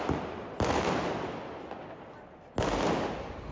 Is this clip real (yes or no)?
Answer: yes